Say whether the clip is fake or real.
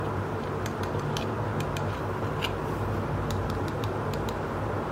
real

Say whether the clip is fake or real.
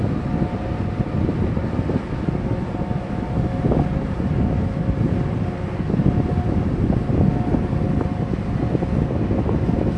real